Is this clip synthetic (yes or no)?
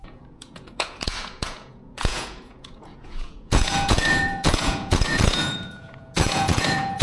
yes